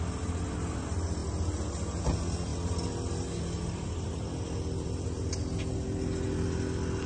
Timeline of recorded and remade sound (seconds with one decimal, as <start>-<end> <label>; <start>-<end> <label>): 0.0-7.1 recorded